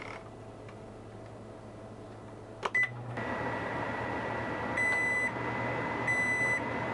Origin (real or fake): real